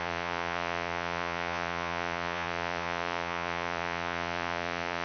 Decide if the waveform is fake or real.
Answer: fake